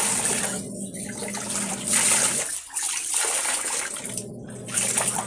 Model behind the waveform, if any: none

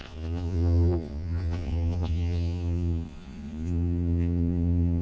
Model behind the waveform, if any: vocoder, Vocos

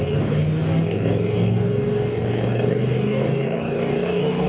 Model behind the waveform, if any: codec, DAC